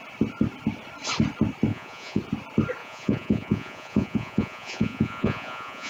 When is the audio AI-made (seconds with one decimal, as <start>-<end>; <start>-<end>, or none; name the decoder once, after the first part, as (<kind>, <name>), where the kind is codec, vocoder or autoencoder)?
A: 1.7-2.2 (vocoder, Vocos); 2.8-5.9